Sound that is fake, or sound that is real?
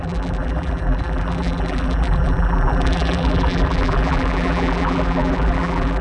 fake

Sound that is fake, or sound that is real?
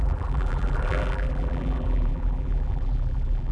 fake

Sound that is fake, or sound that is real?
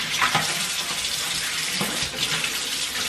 fake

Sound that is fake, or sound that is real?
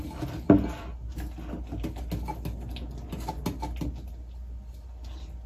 real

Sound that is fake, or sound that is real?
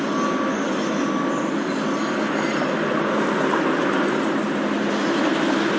real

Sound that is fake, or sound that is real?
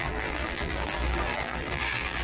fake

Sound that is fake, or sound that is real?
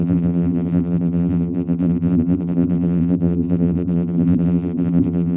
fake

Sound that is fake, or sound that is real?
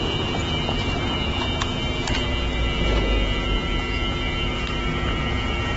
real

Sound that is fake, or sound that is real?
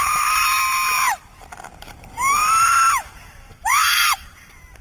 fake